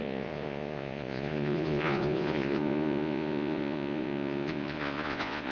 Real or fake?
fake